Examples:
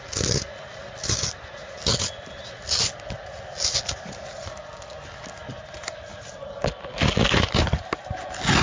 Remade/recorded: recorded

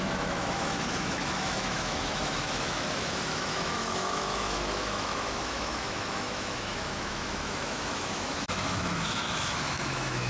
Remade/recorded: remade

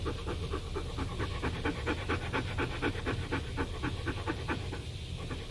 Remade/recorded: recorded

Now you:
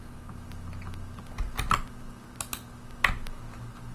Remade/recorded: recorded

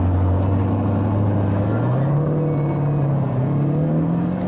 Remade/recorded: recorded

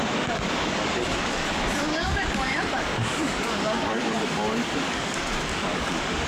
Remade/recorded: remade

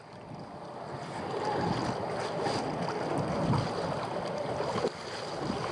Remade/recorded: recorded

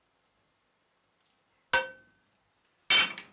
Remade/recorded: recorded